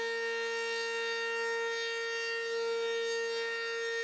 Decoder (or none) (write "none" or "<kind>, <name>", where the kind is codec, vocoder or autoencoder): none